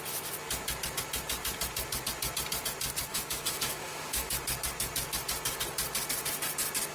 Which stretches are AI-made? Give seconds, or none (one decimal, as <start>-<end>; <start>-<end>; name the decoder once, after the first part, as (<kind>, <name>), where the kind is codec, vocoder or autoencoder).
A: 3.1-4.3 (autoencoder, DAC-VAE)